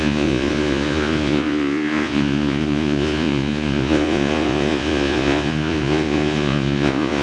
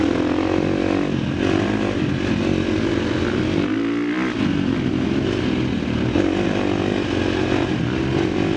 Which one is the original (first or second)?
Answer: second